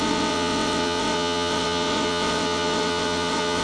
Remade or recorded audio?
remade